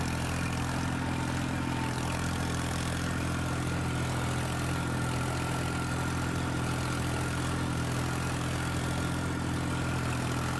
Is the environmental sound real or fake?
real